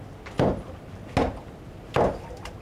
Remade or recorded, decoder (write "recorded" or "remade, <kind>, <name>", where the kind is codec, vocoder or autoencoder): recorded